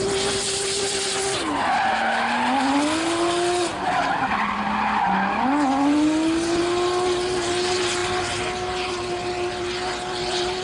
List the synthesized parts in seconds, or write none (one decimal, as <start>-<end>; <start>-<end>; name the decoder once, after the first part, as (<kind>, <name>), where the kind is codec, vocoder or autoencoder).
none